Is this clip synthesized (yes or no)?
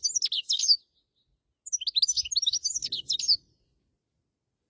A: no